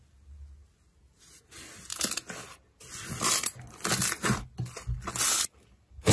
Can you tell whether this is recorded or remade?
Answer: recorded